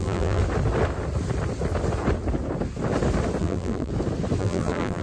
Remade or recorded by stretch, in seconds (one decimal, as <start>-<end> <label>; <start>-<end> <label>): 0.0-0.4 remade; 0.4-3.4 recorded; 3.4-3.9 remade; 3.9-4.4 recorded; 4.4-5.0 remade